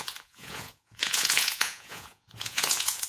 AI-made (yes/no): yes